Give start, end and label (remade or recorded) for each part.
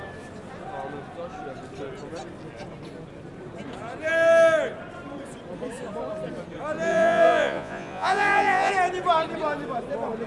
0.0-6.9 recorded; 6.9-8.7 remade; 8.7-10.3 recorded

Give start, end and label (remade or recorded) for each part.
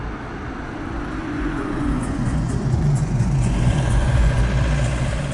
0.0-1.2 recorded; 1.2-4.4 remade; 4.4-5.3 recorded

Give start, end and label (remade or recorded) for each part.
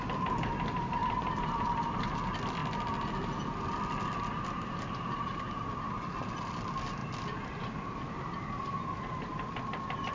0.0-10.1 recorded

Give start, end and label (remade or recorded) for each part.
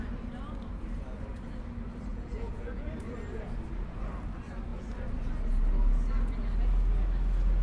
0.0-2.1 recorded; 2.1-2.9 remade; 2.9-7.6 recorded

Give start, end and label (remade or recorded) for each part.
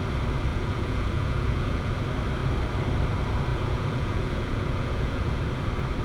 0.0-0.5 recorded; 0.5-1.9 remade; 1.9-3.5 recorded; 3.5-5.4 remade; 5.4-6.0 recorded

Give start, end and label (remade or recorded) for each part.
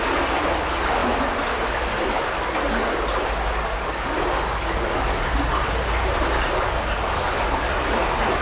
0.0-8.4 recorded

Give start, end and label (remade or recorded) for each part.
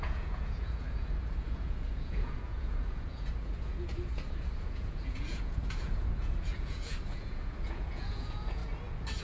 0.0-8.6 remade; 8.6-9.2 recorded